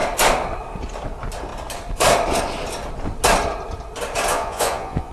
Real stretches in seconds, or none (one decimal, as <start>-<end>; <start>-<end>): 0.0-4.3